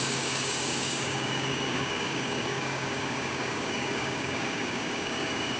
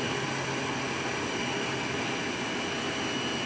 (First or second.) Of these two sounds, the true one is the second